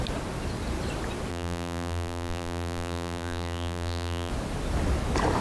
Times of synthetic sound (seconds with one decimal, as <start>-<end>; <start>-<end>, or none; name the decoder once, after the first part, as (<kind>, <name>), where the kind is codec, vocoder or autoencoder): 1.3-4.3 (vocoder, BigVGAN v2)